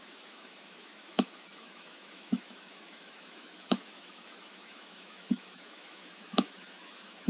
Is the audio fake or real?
fake